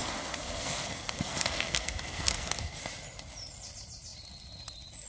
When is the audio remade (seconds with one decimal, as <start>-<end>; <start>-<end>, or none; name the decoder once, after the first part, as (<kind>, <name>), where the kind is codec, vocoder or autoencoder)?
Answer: 0.0-2.8 (codec, SNAC)

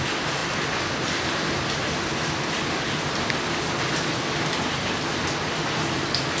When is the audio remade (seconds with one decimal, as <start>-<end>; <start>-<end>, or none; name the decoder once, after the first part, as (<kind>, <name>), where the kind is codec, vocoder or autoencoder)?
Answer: none

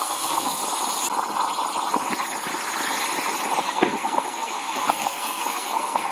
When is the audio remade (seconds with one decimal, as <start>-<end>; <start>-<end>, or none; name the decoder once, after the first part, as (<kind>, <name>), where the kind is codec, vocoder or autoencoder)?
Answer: 0.0-0.6 (codec, SNAC); 3.6-6.1

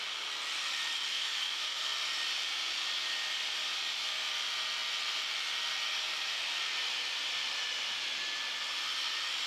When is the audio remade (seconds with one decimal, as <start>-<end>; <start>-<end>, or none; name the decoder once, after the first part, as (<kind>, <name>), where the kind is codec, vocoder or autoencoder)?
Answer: 1.1-1.8 (autoencoder, DAC-VAE)

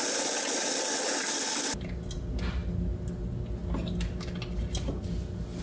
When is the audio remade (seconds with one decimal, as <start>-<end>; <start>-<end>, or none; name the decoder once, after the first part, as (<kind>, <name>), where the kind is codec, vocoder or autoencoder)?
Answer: none

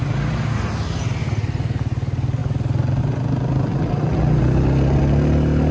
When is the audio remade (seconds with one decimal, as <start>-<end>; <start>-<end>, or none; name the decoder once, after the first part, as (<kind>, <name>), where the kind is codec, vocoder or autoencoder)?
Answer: none

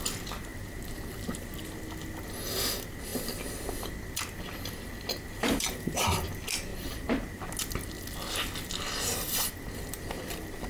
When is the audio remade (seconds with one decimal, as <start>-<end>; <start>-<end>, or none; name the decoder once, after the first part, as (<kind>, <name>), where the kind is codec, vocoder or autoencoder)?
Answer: 0.5-1.6 (vocoder, BigVGAN v2); 5.4-6.0; 6.7-7.5

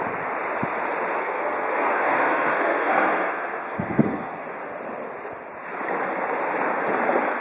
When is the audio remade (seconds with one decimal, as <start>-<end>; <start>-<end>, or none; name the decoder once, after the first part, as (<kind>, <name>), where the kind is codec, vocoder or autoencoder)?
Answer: 1.2-4.4 (codec, SNAC)